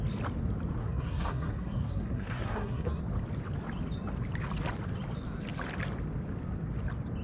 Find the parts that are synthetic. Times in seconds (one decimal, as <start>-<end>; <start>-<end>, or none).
0.8-3.0